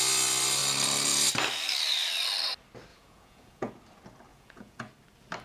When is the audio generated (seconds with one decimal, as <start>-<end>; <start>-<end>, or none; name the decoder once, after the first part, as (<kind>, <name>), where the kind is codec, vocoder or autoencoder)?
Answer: 2.9-3.7 (vocoder, Vocos); 4.3-4.9

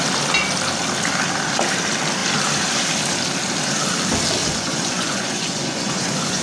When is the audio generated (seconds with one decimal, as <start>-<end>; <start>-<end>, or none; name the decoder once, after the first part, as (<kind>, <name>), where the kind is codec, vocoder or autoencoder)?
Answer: 4.4-6.4 (vocoder, Vocos)